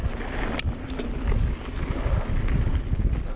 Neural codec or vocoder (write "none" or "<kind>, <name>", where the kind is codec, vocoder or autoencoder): none